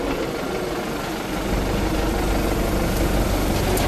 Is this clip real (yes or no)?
yes